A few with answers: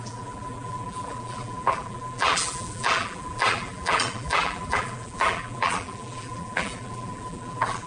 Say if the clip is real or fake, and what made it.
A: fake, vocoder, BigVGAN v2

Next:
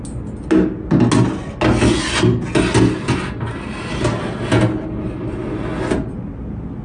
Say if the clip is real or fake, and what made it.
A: real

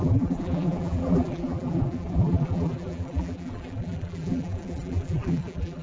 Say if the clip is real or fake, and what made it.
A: fake, vocoder, BigVGAN v2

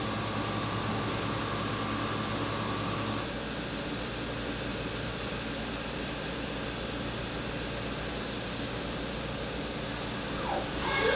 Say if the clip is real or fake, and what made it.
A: real